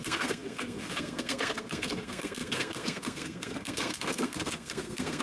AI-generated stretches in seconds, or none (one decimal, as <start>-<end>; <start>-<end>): 0.0-5.2